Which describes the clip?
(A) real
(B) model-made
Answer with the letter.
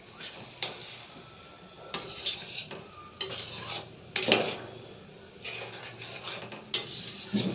A